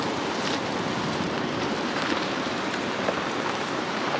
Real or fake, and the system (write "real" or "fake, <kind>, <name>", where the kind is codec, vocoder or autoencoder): fake, vocoder, BigVGAN v2